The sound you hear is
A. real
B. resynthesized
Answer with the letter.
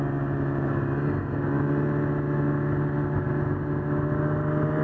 A